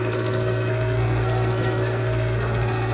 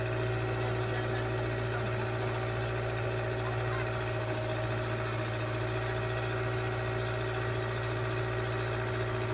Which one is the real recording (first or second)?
second